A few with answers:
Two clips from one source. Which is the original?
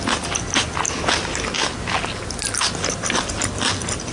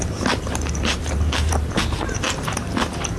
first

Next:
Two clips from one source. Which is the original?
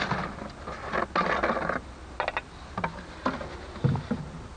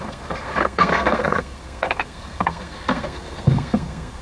first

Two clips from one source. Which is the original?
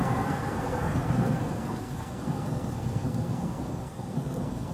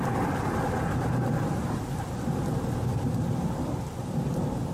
second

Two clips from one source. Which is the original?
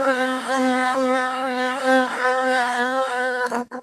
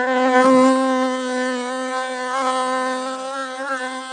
second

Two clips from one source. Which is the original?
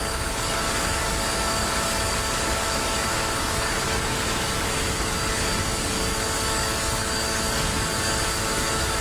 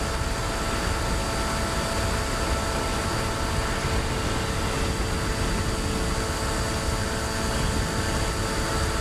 second